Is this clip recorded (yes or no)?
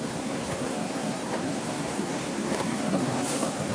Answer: no